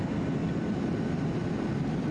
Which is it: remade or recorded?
recorded